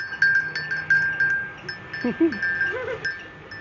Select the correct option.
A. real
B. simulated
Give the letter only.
A